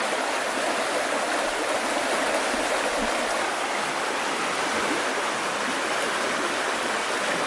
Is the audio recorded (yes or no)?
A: yes